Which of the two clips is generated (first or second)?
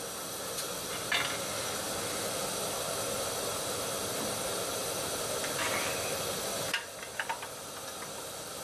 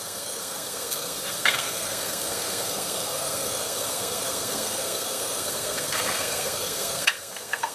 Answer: second